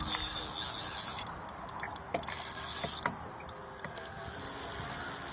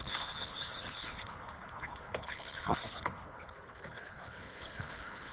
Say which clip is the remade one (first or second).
second